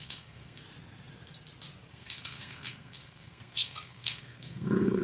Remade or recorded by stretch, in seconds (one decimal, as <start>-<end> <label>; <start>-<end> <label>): 0.0-0.6 remade; 0.6-1.9 recorded; 1.9-5.0 remade